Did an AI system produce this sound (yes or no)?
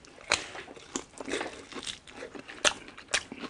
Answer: no